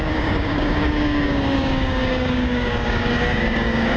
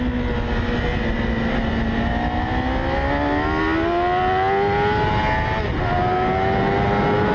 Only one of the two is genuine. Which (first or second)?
second